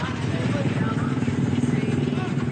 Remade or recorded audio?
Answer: recorded